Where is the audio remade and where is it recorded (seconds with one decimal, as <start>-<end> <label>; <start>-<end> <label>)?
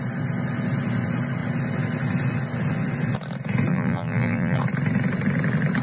0.0-3.7 recorded; 3.7-4.6 remade; 4.6-5.8 recorded